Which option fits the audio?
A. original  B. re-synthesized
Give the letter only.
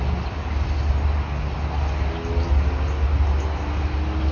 A